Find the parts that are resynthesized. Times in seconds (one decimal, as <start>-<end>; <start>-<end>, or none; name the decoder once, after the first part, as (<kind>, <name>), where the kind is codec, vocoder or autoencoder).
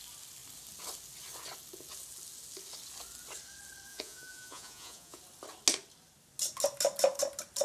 3.9-5.2 (vocoder, Vocos)